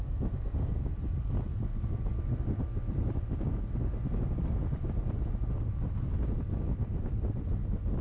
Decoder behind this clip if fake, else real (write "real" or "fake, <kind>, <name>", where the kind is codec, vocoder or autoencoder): real